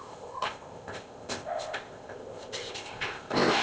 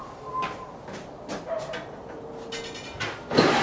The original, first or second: second